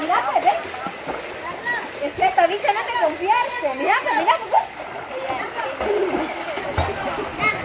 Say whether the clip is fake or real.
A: real